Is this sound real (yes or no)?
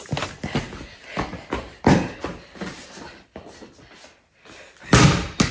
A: yes